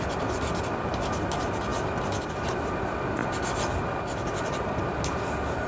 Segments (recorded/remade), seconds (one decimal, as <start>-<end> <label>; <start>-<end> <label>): 0.0-5.7 recorded